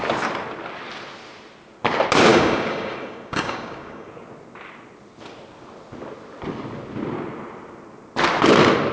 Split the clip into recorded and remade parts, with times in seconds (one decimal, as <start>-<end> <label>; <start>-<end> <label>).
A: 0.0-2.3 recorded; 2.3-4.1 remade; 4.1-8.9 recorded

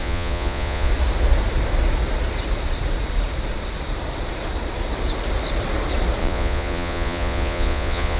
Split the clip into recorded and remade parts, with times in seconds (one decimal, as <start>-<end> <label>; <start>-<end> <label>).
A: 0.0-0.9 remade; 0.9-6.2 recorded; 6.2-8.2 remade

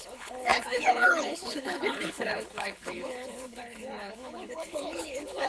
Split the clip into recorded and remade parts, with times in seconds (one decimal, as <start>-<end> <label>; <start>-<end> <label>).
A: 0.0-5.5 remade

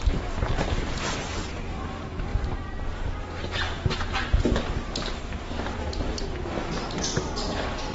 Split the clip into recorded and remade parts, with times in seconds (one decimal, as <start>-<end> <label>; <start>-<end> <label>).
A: 0.0-7.9 recorded